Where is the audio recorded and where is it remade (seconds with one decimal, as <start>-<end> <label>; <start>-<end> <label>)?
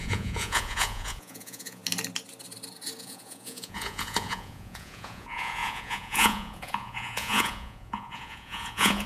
0.0-1.8 remade; 1.8-3.0 recorded; 3.0-9.1 remade